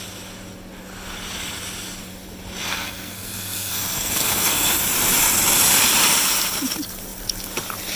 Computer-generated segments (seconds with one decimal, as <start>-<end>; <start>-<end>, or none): 2.7-4.8